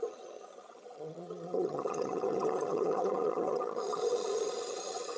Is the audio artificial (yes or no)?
yes